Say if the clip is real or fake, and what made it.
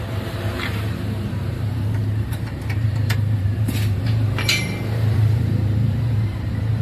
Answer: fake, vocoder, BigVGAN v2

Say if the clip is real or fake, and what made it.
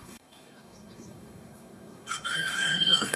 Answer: fake, codec, SNAC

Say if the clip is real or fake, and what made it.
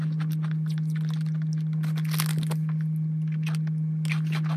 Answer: real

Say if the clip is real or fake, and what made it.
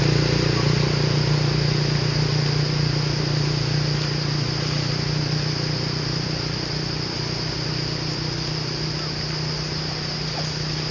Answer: real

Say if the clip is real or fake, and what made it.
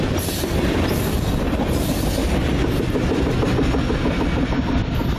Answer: real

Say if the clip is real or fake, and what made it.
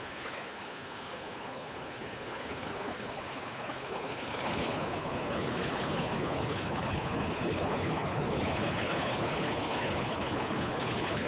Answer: fake, codec, HILCodec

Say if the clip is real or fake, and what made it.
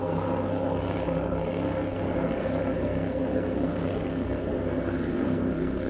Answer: fake, codec, SNAC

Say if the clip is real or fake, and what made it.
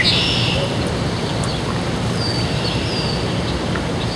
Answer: real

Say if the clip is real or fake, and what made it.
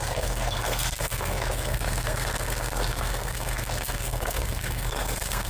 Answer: fake, codec, SNAC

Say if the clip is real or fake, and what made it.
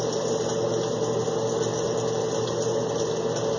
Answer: real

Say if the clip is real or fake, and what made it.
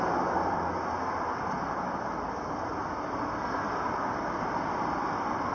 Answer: real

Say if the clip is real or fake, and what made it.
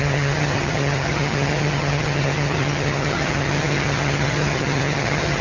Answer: fake, vocoder, HiFi-GAN